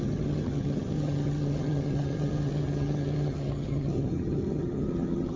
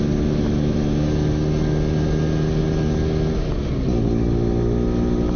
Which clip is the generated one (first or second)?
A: first